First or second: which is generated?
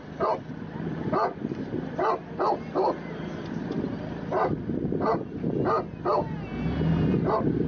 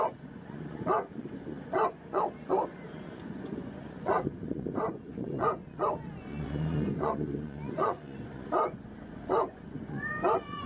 second